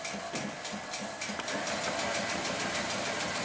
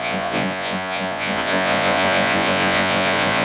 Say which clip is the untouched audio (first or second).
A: first